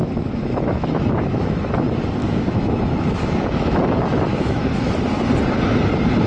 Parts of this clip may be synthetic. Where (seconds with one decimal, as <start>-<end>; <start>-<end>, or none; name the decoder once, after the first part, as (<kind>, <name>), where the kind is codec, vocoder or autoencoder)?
0.0-1.7 (autoencoder, DAC-VAE); 2.2-3.8; 4.3-4.9